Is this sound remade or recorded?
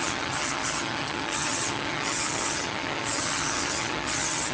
remade